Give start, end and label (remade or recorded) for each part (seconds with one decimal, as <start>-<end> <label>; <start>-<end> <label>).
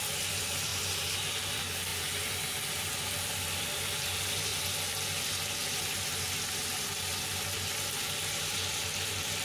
0.0-1.9 remade; 1.9-2.7 recorded; 2.7-4.5 remade; 4.5-8.4 recorded; 8.4-9.4 remade